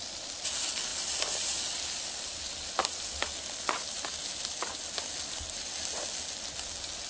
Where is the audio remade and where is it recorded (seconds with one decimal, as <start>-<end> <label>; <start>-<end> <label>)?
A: 0.0-7.1 recorded